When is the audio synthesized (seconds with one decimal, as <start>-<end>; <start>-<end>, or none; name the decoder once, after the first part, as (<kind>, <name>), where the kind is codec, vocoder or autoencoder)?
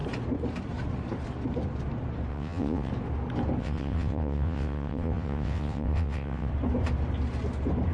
2.3-2.9 (vocoder, WaveNeXt); 3.6-6.5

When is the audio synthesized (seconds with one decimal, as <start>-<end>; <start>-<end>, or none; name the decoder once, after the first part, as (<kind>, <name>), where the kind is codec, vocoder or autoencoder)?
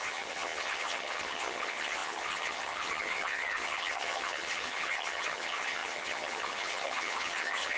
0.0-7.8 (vocoder, HiFi-GAN)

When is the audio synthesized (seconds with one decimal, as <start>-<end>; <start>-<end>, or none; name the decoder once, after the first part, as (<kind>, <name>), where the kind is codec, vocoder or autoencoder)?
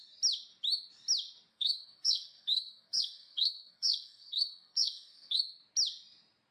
1.5-5.4 (codec, SNAC)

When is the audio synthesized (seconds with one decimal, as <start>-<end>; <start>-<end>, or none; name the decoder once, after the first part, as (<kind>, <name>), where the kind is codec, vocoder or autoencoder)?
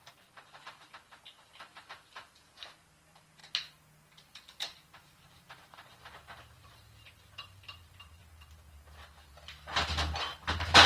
0.0-3.4 (vocoder, BigVGAN v2); 4.1-8.2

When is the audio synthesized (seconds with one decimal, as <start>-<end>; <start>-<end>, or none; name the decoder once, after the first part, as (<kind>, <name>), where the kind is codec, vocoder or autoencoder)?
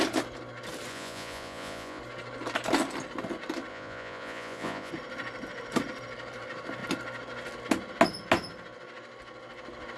0.9-2.0 (vocoder, Vocos); 3.7-4.9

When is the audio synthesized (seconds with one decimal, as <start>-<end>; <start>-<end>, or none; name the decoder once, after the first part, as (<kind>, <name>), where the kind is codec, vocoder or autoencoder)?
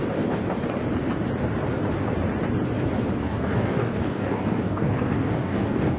3.2-6.0 (codec, DAC)